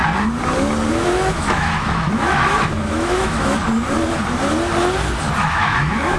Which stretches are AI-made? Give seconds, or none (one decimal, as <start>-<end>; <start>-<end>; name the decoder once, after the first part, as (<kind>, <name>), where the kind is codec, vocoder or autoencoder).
0.9-3.6 (autoencoder, DAC-VAE); 5.4-6.2